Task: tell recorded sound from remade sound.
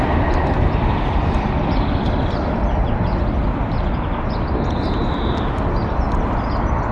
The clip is recorded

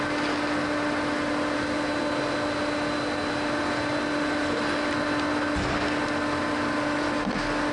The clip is recorded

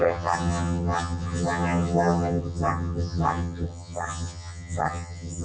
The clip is remade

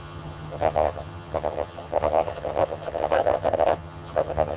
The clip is remade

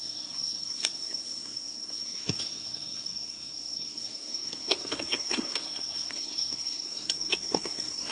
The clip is remade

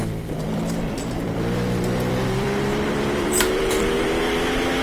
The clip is remade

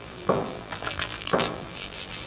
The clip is remade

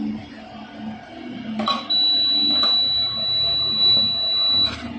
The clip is recorded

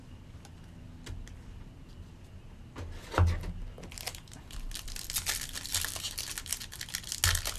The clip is recorded